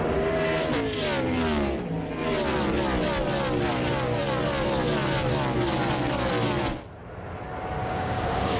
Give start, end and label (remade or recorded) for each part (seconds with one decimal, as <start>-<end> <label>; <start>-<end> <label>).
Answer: 0.0-7.8 recorded; 7.8-8.6 remade